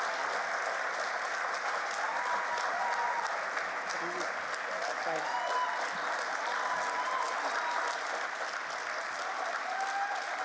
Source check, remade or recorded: recorded